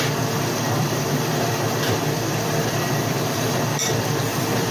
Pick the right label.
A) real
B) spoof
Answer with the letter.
B